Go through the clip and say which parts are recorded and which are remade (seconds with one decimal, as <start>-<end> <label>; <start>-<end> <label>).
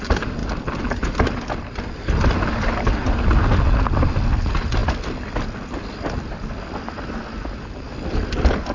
0.0-0.4 recorded; 0.4-1.0 remade; 1.0-8.7 recorded